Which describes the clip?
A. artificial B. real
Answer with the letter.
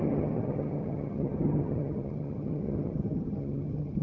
A